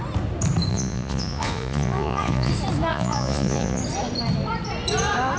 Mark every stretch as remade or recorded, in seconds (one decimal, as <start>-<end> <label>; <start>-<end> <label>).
0.0-0.7 recorded; 0.7-2.5 remade; 2.5-2.9 recorded; 2.9-3.8 remade; 3.8-5.4 recorded